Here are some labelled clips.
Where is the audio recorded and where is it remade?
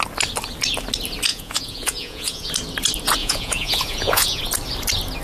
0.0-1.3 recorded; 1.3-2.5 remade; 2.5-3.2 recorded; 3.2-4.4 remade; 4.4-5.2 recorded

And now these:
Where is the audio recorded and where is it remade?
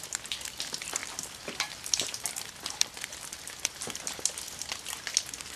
0.0-1.0 recorded; 1.0-4.4 remade; 4.4-5.6 recorded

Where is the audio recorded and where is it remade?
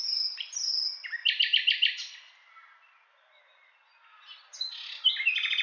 0.0-5.6 recorded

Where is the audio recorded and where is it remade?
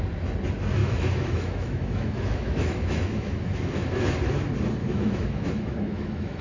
0.0-0.8 recorded; 0.8-4.0 remade; 4.0-4.8 recorded; 4.8-6.4 remade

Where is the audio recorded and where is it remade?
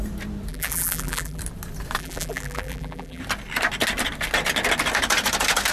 0.0-0.5 recorded; 0.5-1.4 remade; 1.4-2.0 recorded; 2.0-3.2 remade; 3.2-5.7 recorded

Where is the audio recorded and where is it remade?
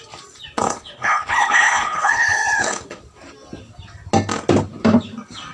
0.0-0.6 recorded; 0.6-3.0 remade; 3.0-5.5 recorded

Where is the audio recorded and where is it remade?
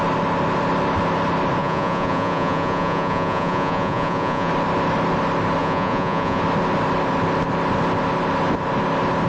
0.0-1.6 recorded; 1.6-4.5 remade; 4.5-5.6 recorded; 5.6-6.4 remade; 6.4-9.3 recorded